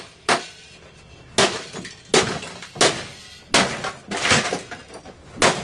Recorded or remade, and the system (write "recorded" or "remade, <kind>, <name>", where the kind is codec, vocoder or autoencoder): recorded